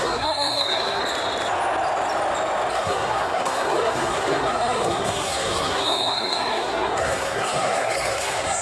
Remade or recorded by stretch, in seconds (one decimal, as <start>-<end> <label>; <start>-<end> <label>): 0.0-1.0 remade; 1.0-2.7 recorded; 2.7-8.6 remade